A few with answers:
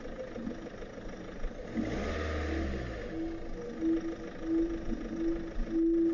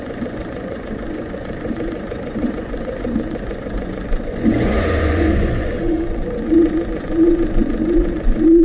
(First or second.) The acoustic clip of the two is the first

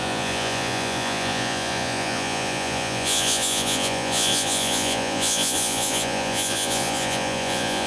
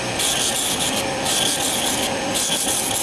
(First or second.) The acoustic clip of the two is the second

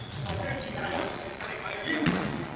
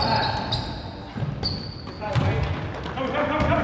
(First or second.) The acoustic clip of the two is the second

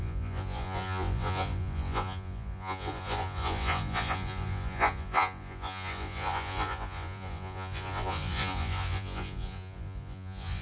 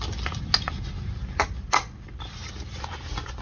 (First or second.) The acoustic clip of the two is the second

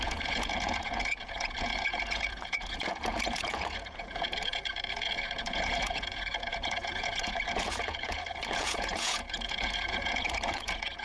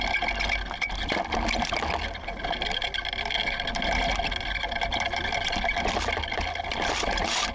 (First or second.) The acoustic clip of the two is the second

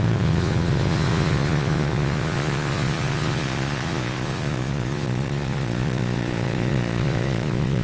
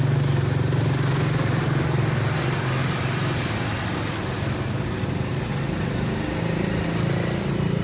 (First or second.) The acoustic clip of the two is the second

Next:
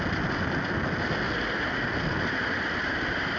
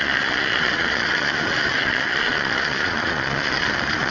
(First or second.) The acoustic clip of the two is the first